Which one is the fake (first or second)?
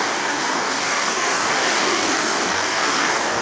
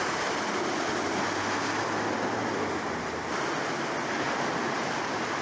first